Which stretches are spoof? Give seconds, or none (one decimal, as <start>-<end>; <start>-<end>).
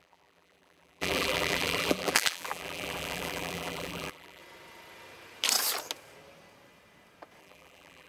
0.0-4.4; 7.4-8.1